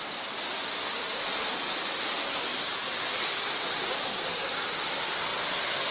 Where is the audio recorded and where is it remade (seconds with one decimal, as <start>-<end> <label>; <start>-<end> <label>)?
0.0-5.9 recorded